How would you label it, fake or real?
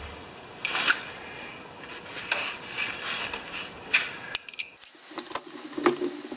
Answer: real